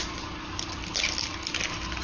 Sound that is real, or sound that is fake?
real